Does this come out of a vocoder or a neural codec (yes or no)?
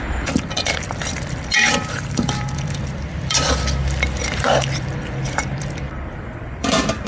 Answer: yes